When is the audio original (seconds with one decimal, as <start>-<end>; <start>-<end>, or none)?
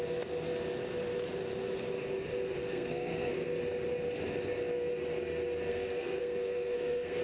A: 0.0-2.6; 3.6-5.7